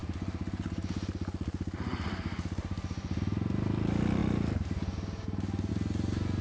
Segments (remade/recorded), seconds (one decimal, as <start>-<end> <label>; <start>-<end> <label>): 0.0-6.4 recorded